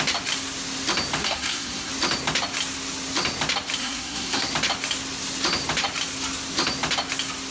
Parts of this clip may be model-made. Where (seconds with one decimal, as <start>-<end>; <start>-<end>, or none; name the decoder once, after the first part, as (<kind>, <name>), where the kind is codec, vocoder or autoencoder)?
1.2-1.9 (codec, SNAC); 3.8-4.5